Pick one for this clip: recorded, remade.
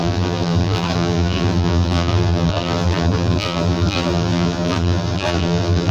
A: remade